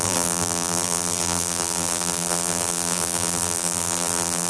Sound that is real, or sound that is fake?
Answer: fake